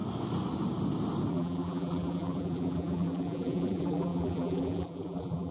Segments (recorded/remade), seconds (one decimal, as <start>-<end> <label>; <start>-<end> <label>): 0.0-1.3 recorded; 1.3-5.5 remade